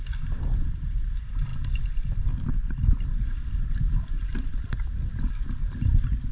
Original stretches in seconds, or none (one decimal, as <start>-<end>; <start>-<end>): 0.0-6.3